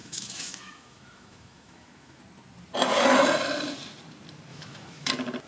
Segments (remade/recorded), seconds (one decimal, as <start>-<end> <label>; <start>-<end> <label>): 0.0-2.2 remade; 2.2-4.5 recorded; 4.5-5.1 remade; 5.1-5.5 recorded